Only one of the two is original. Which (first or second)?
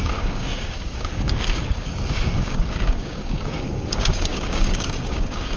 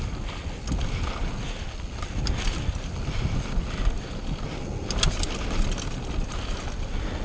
second